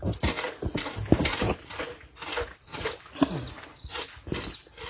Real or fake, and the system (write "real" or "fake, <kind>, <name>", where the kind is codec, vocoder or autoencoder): real